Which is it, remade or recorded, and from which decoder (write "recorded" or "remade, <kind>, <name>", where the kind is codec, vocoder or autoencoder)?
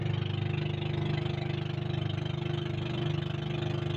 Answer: recorded